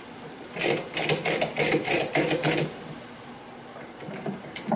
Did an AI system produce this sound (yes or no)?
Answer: no